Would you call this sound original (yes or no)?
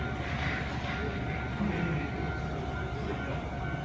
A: yes